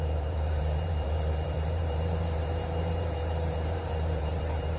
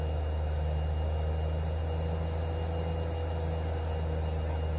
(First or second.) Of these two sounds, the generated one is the first